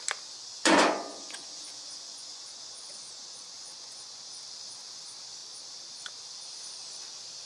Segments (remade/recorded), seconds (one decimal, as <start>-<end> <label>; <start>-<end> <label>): 0.0-0.5 recorded; 0.5-4.2 remade; 4.2-7.5 recorded